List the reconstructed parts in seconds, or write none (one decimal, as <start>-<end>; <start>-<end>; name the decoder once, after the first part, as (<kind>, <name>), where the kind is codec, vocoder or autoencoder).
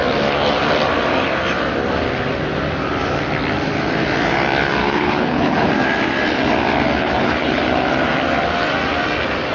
4.8-5.7 (codec, HILCodec); 7.0-7.6